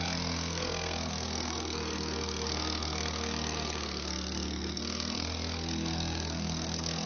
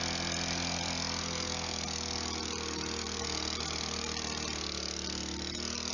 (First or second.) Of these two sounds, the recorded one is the second